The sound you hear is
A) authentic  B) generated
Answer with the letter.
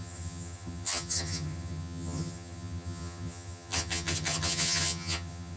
B